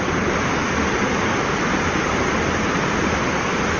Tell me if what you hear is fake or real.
real